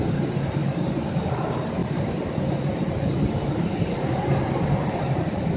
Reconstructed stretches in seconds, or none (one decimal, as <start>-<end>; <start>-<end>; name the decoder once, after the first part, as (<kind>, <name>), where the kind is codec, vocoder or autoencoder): 0.0-0.6 (vocoder, BigVGAN v2); 1.3-1.8; 3.6-5.6